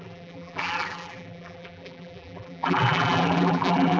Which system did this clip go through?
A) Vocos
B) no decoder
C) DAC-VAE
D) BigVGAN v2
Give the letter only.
D